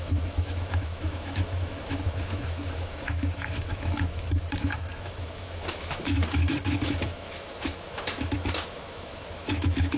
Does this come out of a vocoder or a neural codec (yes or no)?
yes